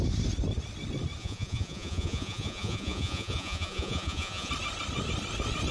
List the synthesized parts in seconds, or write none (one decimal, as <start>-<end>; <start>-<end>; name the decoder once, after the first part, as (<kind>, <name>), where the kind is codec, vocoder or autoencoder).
1.2-4.5 (vocoder, Vocos)